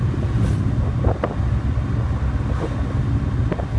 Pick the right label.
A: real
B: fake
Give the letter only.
A